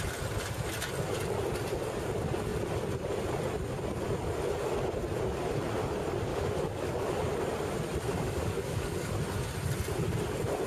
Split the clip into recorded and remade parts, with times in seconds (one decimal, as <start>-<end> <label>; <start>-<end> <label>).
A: 0.0-6.3 recorded; 6.3-6.9 remade; 6.9-8.1 recorded; 8.1-9.1 remade; 9.1-10.7 recorded